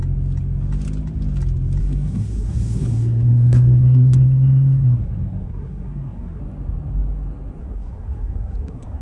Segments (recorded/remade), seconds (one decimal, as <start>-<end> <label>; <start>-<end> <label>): 0.0-1.8 recorded; 1.8-6.4 remade; 6.4-7.6 recorded; 7.6-9.0 remade